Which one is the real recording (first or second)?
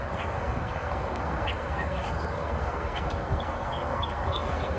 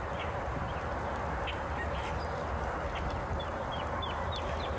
second